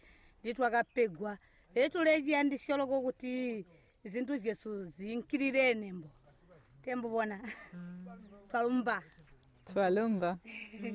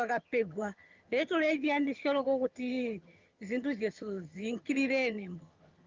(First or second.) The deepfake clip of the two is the second